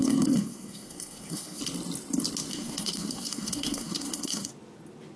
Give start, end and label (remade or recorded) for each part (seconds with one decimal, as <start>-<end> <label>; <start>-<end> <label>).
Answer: 0.0-1.6 remade; 1.6-2.5 recorded; 2.5-4.5 remade; 4.5-5.2 recorded